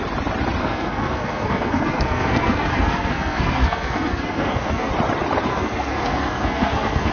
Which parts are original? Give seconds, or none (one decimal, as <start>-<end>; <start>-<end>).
0.0-0.6; 4.9-5.5